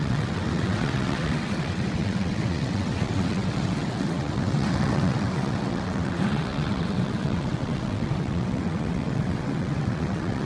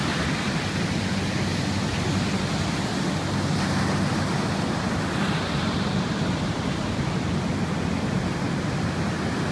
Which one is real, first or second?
second